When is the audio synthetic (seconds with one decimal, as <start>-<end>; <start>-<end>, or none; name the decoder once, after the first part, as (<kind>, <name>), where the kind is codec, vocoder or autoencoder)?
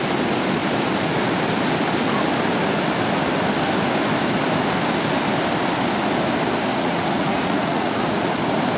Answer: 6.7-8.3 (vocoder, Vocos)